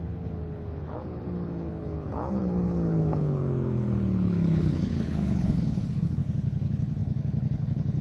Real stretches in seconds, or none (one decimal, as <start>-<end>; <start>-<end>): none